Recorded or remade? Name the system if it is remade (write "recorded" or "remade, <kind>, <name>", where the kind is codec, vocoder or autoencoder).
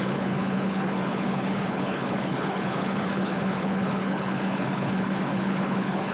remade, codec, HILCodec